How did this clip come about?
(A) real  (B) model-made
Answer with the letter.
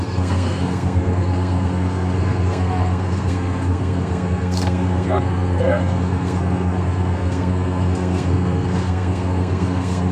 B